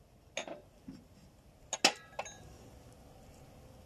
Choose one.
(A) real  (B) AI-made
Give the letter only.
A